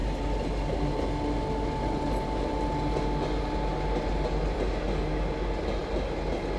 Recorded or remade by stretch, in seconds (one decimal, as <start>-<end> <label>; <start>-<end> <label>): 0.0-6.6 recorded